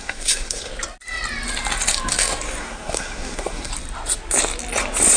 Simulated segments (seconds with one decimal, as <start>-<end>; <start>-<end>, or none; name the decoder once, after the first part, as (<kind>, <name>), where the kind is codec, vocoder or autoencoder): 0.0-0.7 (codec, SNAC); 2.6-3.7